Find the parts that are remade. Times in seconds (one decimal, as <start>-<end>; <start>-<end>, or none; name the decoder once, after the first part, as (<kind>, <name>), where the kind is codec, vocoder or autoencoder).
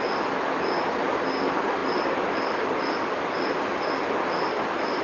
none